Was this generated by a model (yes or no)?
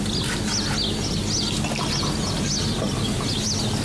no